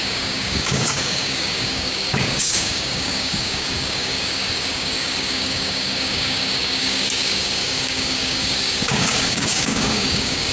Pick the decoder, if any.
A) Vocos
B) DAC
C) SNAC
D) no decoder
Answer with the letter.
B